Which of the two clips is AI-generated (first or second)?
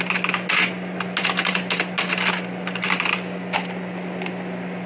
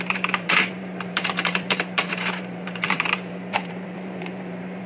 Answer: second